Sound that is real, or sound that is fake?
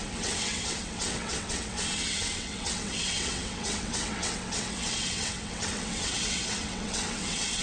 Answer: fake